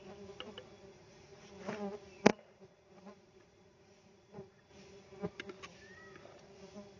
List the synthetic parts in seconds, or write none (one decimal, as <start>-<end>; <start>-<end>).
0.9-1.5; 2.3-4.7